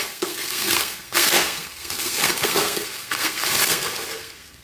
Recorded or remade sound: remade